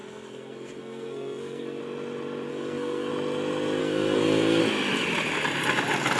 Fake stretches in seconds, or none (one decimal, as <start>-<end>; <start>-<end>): 0.0-1.8; 2.5-3.1; 3.8-4.6